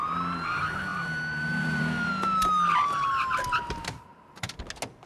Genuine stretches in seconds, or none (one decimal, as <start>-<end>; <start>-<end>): 0.0-0.9; 2.1-4.1; 4.6-5.1